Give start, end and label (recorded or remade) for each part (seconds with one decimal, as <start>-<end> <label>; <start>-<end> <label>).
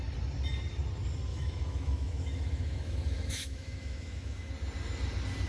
0.0-1.3 recorded; 1.3-4.5 remade; 4.5-5.5 recorded